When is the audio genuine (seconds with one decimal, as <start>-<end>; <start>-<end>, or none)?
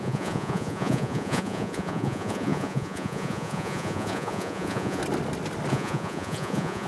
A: 5.0-5.7